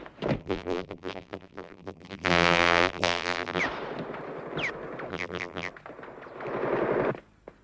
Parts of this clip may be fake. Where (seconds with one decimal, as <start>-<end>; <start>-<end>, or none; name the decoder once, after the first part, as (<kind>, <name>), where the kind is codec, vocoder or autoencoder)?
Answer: 0.4-3.6 (vocoder, BigVGAN v2); 5.1-5.7